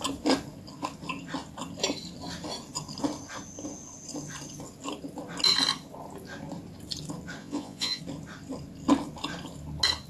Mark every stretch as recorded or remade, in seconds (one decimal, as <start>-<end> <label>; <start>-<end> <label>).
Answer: 0.0-7.4 recorded; 7.4-8.0 remade; 8.0-10.1 recorded

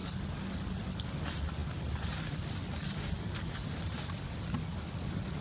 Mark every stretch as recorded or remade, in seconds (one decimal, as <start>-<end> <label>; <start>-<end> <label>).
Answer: 0.0-5.4 recorded

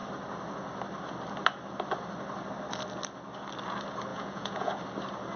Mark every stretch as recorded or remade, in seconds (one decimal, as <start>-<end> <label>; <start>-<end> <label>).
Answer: 0.0-4.1 recorded; 4.1-4.7 remade; 4.7-5.4 recorded

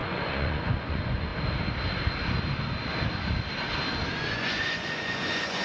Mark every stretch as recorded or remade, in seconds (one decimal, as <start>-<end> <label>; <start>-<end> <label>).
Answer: 0.0-1.3 remade; 1.3-4.1 recorded; 4.1-5.6 remade

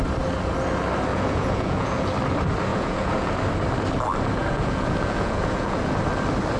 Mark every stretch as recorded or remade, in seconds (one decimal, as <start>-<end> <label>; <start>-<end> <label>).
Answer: 0.0-1.1 recorded; 1.1-2.1 remade; 2.1-2.7 recorded; 2.7-3.3 remade; 3.3-4.4 recorded; 4.4-5.8 remade; 5.8-6.6 recorded

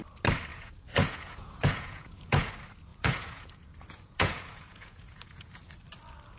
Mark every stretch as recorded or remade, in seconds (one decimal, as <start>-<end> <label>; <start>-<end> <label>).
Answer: 0.0-0.5 recorded; 0.5-2.5 remade; 2.5-2.9 recorded; 2.9-5.7 remade; 5.7-6.4 recorded